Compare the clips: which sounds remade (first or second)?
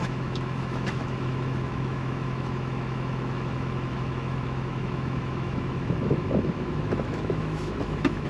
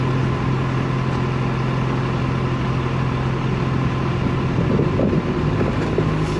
first